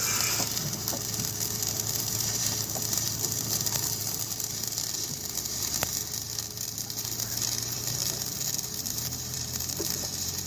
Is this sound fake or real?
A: fake